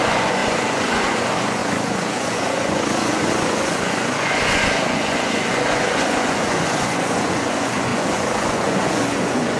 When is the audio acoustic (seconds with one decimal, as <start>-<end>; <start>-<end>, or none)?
none